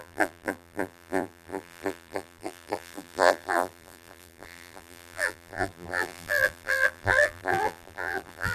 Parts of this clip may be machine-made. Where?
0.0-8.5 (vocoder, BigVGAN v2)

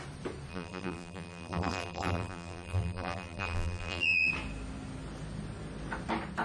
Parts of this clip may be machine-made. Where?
0.5-4.3 (vocoder, BigVGAN v2)